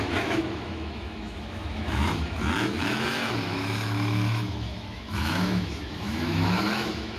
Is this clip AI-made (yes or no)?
yes